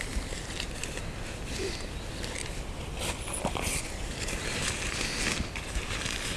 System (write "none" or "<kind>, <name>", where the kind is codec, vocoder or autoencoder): none